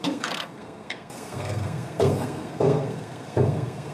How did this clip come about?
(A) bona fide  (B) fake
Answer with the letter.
B